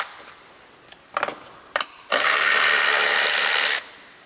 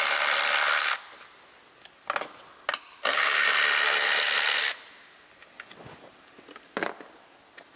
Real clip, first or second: second